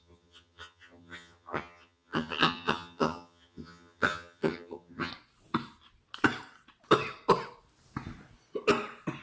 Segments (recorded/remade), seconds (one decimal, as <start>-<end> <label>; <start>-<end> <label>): 0.0-5.1 remade; 5.1-9.2 recorded